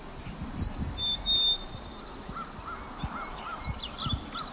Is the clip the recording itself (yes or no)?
yes